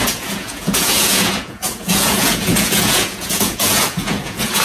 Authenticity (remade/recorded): remade